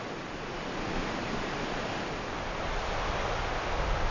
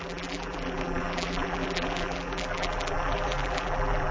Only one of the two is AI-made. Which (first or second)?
second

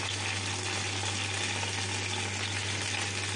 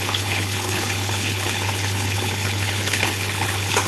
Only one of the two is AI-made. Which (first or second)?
second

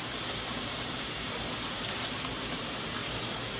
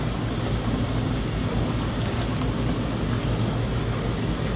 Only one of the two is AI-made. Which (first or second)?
first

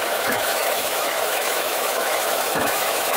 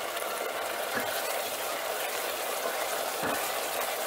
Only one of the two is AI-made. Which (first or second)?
first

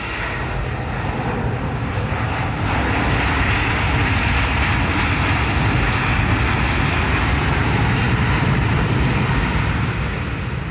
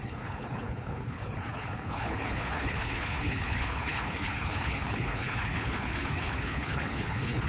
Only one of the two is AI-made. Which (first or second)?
second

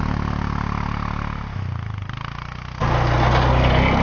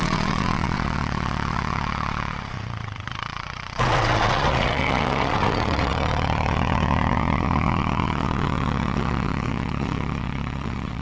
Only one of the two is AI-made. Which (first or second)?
second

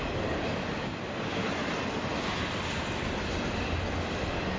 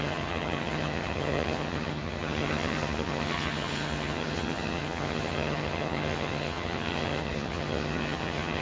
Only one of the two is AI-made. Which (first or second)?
second